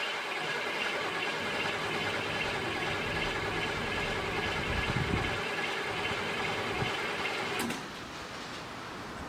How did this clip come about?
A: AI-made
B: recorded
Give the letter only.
B